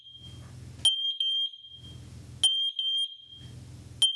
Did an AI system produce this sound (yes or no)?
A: no